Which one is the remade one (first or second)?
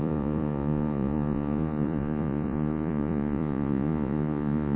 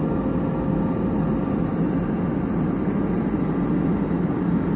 first